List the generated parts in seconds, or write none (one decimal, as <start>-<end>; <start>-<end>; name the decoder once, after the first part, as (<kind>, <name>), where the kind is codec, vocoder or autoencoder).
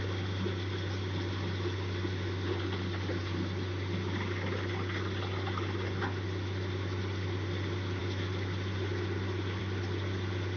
none